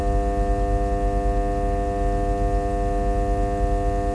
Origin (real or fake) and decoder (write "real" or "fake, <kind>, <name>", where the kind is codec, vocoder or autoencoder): real